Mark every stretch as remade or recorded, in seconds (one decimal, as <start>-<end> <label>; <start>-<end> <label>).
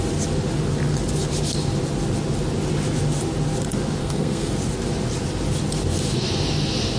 0.0-4.0 recorded; 4.0-4.5 remade; 4.5-7.0 recorded